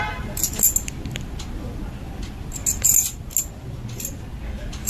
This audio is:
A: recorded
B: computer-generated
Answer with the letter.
A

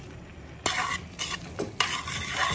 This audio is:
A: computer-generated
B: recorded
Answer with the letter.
B